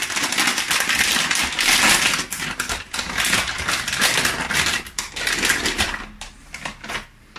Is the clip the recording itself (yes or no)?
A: yes